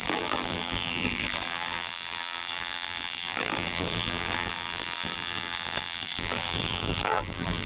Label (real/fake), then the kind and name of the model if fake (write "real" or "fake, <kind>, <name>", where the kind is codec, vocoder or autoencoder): fake, vocoder, BigVGAN v2